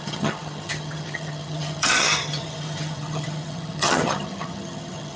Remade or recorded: remade